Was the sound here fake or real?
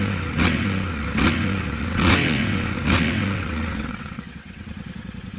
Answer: fake